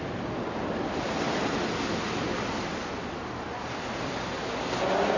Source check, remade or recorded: recorded